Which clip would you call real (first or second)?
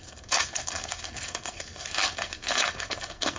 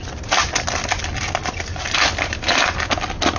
second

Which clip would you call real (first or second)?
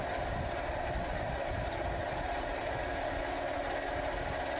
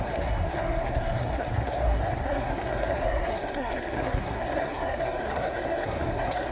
first